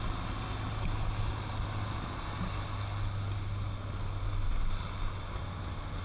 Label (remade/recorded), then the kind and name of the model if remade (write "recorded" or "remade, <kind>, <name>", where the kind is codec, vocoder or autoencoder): recorded